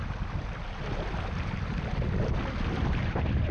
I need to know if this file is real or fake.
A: real